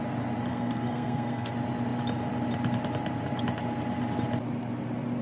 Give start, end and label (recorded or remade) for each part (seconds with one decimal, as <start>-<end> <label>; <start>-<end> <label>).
0.0-0.5 recorded; 0.5-1.5 remade; 1.5-5.2 recorded